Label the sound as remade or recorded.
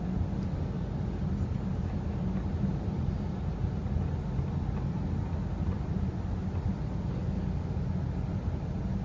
recorded